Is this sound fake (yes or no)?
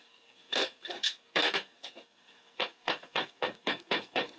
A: yes